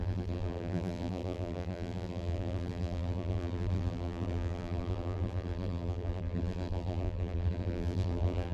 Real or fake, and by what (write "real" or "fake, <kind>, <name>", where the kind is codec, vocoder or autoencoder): fake, vocoder, BigVGAN v2